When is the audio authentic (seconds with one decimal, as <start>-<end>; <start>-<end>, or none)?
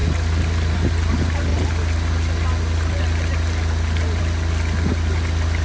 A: 0.0-5.6